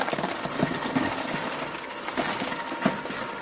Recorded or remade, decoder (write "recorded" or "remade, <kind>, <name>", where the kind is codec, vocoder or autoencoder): remade, vocoder, BigVGAN v2